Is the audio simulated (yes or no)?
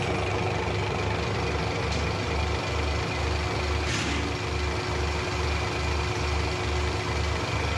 no